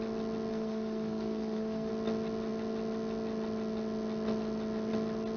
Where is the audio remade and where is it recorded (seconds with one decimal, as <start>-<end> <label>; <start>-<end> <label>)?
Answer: 0.0-0.5 recorded; 0.5-1.9 remade; 1.9-5.4 recorded